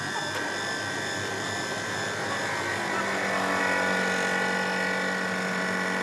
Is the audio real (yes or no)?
yes